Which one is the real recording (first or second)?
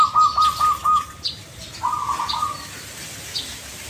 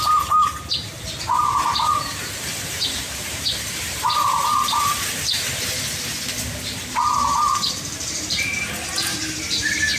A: first